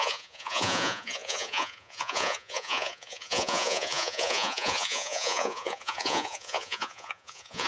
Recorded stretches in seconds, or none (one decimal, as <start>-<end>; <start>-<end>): none